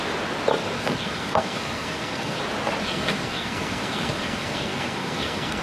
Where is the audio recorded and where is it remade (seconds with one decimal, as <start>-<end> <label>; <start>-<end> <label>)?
0.0-0.6 recorded; 0.6-2.4 remade; 2.4-2.8 recorded; 2.8-5.6 remade